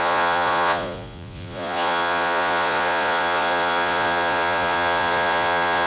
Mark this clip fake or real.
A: fake